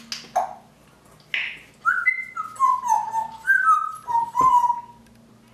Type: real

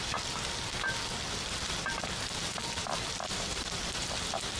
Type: fake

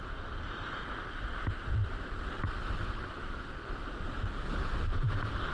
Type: real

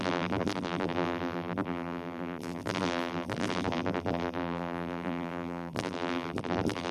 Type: fake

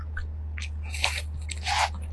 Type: real